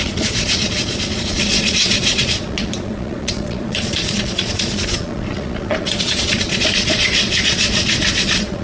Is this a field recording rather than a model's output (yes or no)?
no